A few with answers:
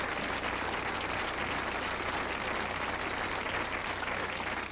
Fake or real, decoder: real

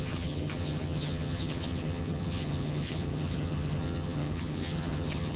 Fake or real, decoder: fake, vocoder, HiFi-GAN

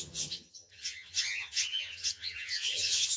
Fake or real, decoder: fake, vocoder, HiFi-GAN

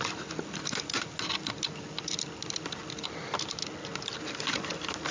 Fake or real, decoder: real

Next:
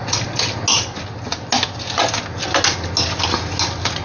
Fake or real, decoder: real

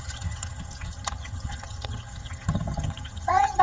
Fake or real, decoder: fake, vocoder, HiFi-GAN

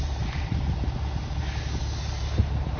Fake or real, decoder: real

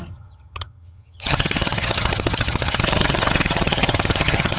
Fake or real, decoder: fake, vocoder, HiFi-GAN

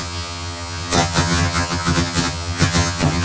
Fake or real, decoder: fake, vocoder, HiFi-GAN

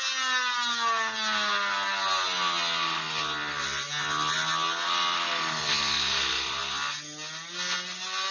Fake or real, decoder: real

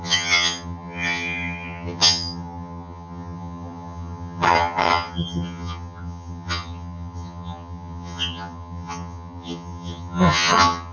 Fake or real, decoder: fake, vocoder, HiFi-GAN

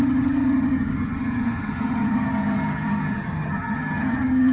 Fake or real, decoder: fake, vocoder, HiFi-GAN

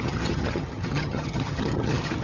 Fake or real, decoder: fake, vocoder, HiFi-GAN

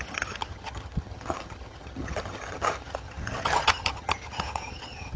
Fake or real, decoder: fake, vocoder, HiFi-GAN